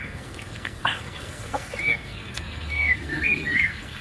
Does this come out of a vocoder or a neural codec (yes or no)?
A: yes